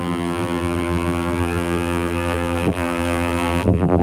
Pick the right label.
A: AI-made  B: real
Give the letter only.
A